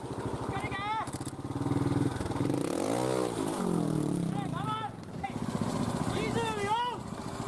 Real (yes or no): yes